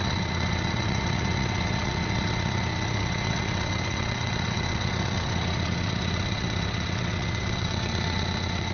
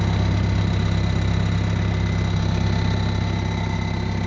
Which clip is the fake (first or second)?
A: first